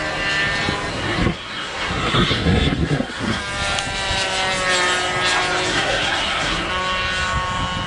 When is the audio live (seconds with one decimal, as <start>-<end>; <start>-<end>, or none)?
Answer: 0.0-0.9; 3.4-5.7; 6.7-7.9